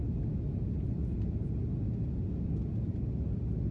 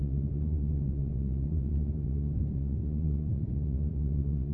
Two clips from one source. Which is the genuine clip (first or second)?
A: first